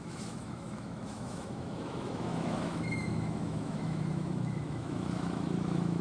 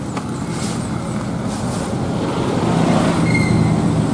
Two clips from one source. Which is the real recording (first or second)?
second